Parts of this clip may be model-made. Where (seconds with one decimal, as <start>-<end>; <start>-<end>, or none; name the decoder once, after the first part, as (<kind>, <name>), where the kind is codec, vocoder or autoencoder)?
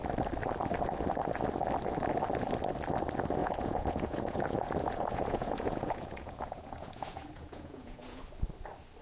3.4-8.2 (vocoder, Vocos)